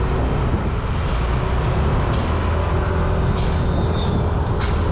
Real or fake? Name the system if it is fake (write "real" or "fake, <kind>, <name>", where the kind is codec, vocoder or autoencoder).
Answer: real